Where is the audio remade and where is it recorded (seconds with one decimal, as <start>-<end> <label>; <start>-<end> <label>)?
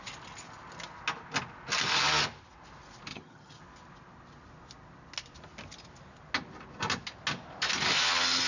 0.0-3.1 recorded; 3.1-3.6 remade; 3.6-8.5 recorded